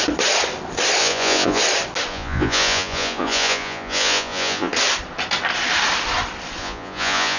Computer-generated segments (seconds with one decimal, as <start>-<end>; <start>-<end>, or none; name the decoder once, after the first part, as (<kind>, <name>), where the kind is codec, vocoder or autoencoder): 1.0-1.6 (vocoder, Vocos); 2.1-4.7; 6.6-7.4